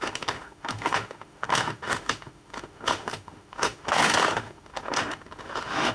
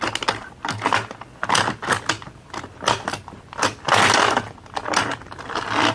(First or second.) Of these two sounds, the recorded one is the second